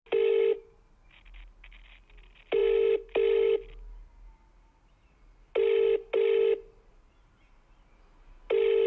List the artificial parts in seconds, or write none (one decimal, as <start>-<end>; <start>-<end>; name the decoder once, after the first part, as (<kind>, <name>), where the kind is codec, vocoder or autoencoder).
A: none